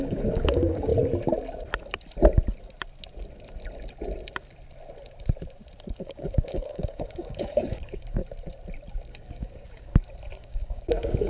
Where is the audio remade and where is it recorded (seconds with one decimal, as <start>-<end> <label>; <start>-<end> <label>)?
0.0-0.9 remade; 0.9-6.0 recorded; 6.0-8.2 remade; 8.2-9.1 recorded; 9.1-9.9 remade; 9.9-10.4 recorded; 10.4-11.3 remade

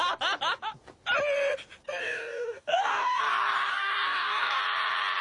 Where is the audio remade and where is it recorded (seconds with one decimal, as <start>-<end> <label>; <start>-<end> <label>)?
0.0-2.0 recorded; 2.0-3.2 remade; 3.2-3.7 recorded; 3.7-4.6 remade; 4.6-5.2 recorded